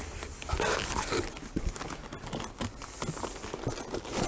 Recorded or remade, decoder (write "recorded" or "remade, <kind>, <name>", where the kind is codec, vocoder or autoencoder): recorded